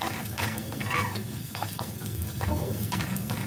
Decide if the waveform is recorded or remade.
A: remade